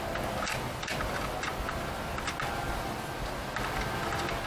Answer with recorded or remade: recorded